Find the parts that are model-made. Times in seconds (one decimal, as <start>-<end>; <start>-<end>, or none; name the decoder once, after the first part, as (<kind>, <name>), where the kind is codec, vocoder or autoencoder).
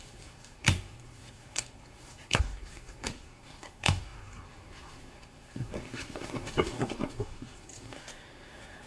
0.0-8.9 (codec, SNAC)